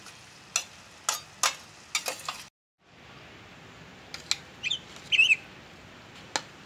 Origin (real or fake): real